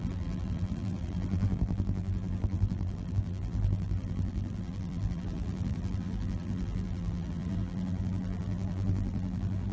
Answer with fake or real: fake